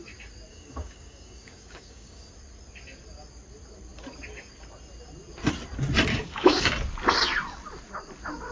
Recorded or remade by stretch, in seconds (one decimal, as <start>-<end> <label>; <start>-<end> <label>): 0.0-0.5 recorded; 0.5-2.3 remade; 2.3-6.1 recorded; 6.1-6.7 remade; 6.7-8.5 recorded